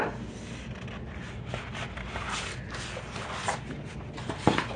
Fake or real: real